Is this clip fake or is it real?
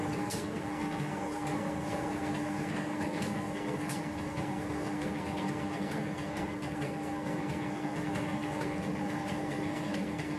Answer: fake